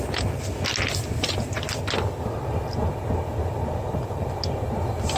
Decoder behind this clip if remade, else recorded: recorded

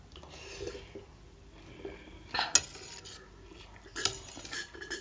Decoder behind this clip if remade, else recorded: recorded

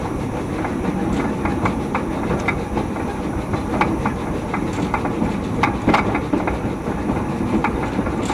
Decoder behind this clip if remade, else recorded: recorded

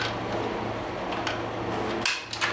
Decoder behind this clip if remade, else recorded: recorded